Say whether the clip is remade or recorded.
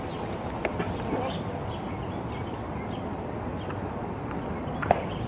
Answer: recorded